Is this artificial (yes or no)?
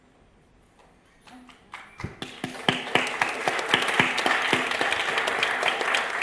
no